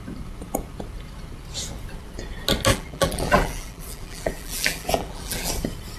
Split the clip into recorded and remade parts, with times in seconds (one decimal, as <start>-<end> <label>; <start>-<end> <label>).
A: 0.0-2.7 recorded; 2.7-5.5 remade; 5.5-6.0 recorded